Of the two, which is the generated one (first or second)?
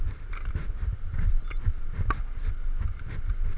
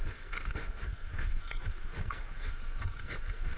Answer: second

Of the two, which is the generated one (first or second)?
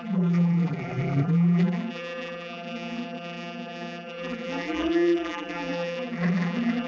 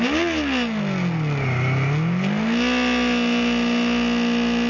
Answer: first